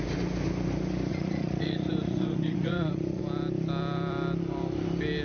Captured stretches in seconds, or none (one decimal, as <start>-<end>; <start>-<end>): 0.0-1.1; 3.2-5.2